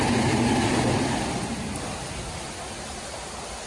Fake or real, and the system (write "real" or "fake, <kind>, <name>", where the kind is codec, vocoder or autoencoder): real